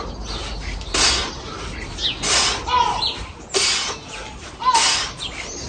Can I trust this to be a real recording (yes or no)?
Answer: yes